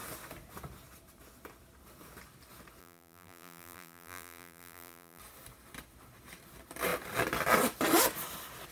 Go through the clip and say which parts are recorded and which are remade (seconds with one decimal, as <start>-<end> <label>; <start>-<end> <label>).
0.0-2.8 recorded; 2.8-5.2 remade; 5.2-8.7 recorded